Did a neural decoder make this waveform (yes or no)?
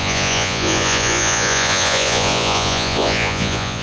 yes